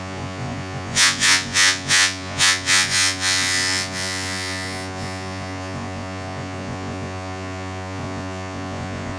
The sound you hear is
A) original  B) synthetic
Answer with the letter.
B